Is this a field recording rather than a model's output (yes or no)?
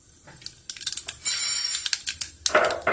yes